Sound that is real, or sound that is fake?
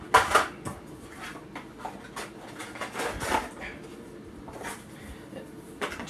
real